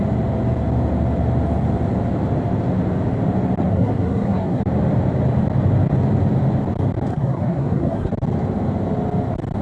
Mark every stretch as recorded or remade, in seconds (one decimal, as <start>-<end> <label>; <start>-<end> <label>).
0.0-3.6 recorded; 3.6-4.6 remade; 4.6-7.1 recorded; 7.1-8.1 remade; 8.1-9.6 recorded